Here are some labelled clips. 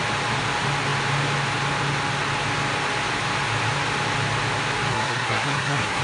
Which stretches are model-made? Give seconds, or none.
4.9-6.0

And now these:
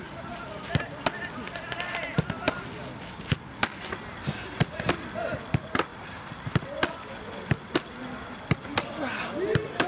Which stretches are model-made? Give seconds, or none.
none

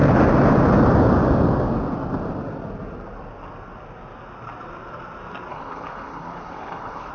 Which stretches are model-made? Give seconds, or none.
5.5-7.1

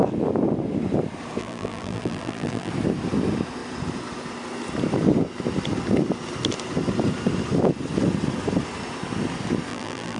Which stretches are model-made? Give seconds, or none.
1.4-2.7; 9.7-10.2

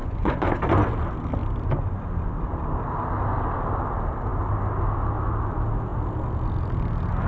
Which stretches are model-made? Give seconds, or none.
0.0-0.5

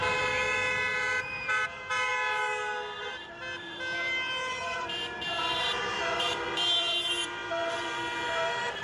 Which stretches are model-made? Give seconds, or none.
0.0-2.1; 3.0-8.8

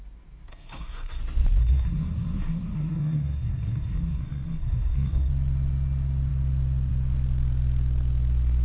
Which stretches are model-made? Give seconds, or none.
0.5-1.2; 1.6-5.3